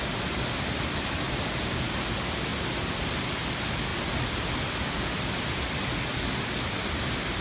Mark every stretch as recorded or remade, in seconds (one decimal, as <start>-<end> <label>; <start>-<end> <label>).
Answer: 0.0-7.4 recorded